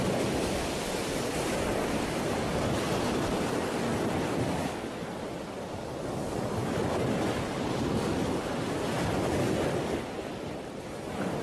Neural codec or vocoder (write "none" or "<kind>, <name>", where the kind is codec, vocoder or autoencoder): none